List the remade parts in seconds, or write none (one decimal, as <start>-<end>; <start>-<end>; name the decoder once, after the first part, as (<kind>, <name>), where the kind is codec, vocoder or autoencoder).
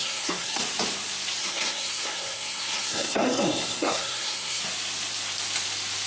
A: 0.0-0.6 (codec, SNAC); 1.4-4.6